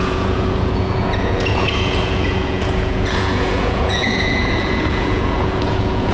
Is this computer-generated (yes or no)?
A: yes